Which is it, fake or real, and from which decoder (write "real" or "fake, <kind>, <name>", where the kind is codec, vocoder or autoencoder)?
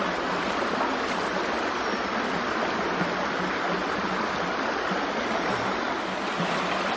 real